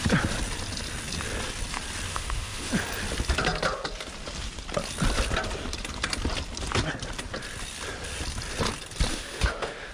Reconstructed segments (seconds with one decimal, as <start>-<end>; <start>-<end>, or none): 2.1-2.7; 9.1-9.9